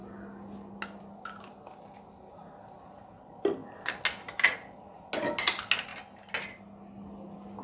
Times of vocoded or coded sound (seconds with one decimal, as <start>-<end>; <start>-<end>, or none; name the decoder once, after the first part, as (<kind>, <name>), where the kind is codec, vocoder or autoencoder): none